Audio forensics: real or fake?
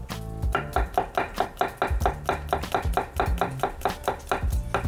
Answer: real